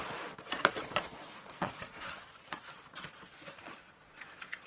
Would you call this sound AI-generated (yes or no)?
yes